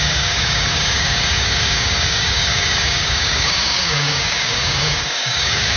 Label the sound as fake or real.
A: fake